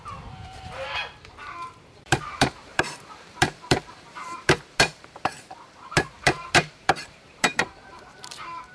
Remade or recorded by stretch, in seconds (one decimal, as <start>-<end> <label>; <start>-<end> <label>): 0.0-8.7 remade